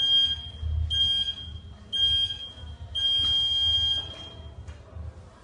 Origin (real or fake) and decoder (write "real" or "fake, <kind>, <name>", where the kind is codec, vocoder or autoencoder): real